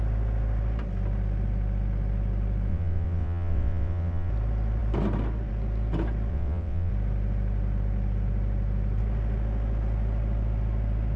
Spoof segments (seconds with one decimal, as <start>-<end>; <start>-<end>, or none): 2.7-4.3; 6.3-6.9